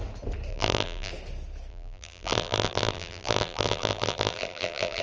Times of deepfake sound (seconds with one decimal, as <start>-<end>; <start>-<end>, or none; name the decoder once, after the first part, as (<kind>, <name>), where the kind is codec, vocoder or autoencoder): 0.5-1.1 (vocoder, BigVGAN v2); 1.7-5.0